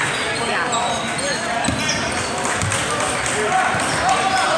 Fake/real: real